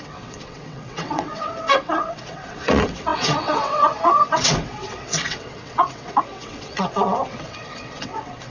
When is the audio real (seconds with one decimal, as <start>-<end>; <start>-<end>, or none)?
none